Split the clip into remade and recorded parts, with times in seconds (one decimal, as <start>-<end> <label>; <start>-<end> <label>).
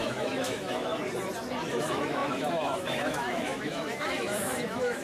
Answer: 0.0-1.0 remade; 1.0-1.7 recorded; 1.7-5.0 remade